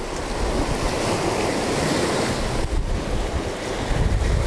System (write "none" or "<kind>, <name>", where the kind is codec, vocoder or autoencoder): none